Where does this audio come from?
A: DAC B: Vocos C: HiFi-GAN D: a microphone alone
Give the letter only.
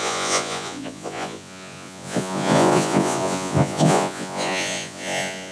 B